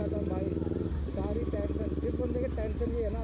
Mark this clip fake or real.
real